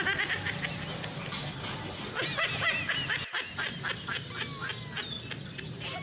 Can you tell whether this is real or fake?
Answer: real